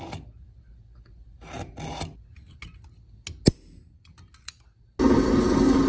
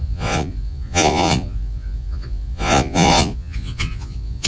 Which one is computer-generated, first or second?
second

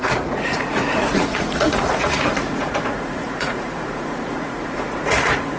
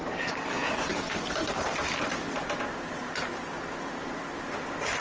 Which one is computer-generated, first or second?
first